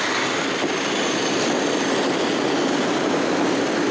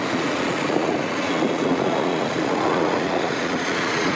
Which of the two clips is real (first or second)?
first